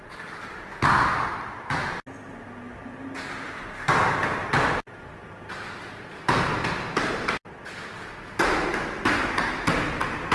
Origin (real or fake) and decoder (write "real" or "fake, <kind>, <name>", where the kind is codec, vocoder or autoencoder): real